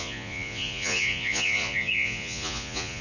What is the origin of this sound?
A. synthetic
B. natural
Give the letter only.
A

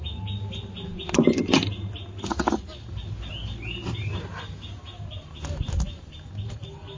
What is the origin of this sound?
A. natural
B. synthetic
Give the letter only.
A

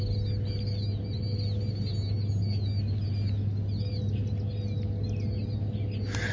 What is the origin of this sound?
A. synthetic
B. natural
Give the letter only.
B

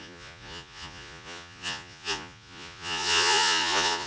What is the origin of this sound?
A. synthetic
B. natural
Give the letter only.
A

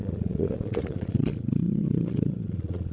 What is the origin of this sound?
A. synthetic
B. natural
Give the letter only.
A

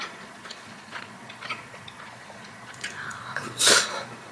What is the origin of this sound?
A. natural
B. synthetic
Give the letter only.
B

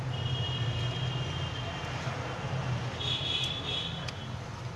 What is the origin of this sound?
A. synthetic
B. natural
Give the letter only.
B